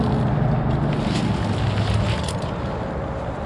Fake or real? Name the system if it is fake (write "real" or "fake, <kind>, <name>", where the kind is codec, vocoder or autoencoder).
real